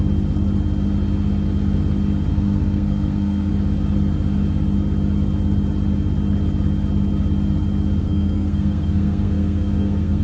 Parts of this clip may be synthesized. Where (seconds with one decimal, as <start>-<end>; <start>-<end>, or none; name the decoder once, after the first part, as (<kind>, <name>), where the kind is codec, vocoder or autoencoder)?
2.3-3.5 (codec, SNAC); 8.0-10.2